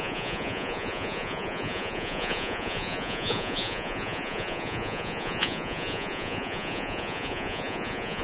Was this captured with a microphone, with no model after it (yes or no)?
no